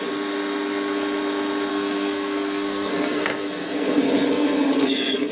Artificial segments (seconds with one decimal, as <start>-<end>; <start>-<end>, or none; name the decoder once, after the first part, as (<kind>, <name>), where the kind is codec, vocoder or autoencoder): 1.7-5.3 (codec, SNAC)